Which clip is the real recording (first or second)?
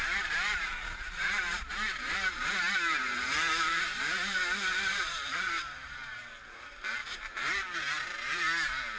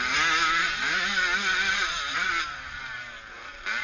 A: second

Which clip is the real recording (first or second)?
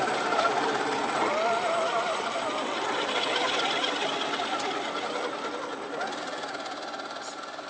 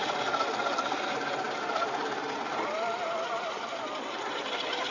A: second